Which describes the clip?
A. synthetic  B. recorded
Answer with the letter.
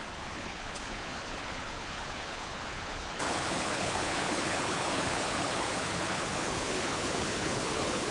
A